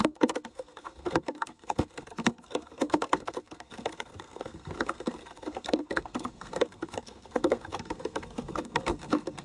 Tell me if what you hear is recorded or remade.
remade